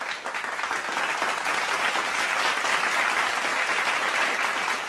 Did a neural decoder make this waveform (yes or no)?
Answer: no